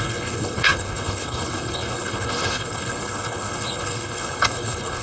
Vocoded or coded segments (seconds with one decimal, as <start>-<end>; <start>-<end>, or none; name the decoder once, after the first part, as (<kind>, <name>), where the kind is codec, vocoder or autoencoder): 0.0-5.0 (codec, HILCodec)